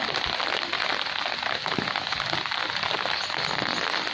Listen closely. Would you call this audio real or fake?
real